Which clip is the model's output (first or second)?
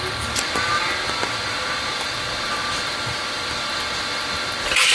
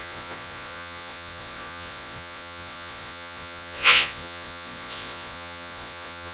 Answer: second